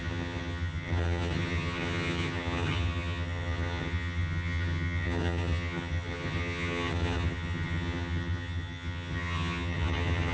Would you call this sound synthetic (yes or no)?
yes